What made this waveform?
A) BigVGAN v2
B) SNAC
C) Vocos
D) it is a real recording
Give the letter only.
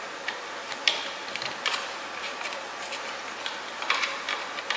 A